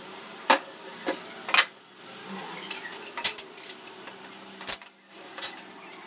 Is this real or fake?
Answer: real